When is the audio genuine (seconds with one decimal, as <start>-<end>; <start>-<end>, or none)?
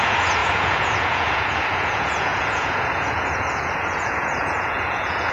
none